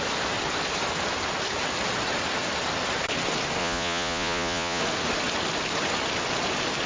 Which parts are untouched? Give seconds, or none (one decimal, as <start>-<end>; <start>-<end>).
0.0-3.6; 4.8-6.9